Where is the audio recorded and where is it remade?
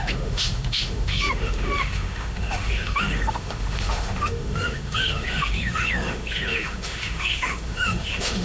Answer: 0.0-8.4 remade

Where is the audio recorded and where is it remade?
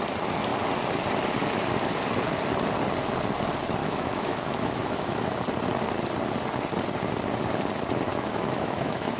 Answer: 0.0-3.8 recorded; 3.8-5.4 remade; 5.4-8.1 recorded; 8.1-9.2 remade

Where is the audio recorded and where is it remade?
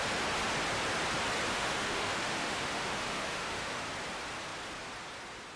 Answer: 0.0-1.5 recorded; 1.5-3.8 remade; 3.8-5.6 recorded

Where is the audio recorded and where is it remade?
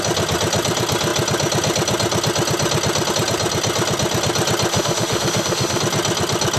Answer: 0.0-4.7 recorded; 4.7-5.8 remade; 5.8-6.6 recorded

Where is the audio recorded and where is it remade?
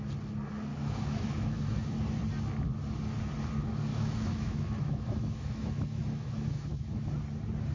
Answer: 0.0-0.7 recorded; 0.7-2.0 remade; 2.0-3.9 recorded; 3.9-7.1 remade; 7.1-7.7 recorded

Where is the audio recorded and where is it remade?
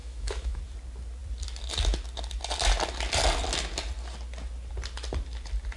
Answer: 0.0-0.6 remade; 0.6-5.8 recorded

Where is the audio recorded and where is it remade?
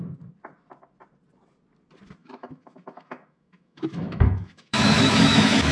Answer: 0.0-2.2 recorded; 2.2-5.7 remade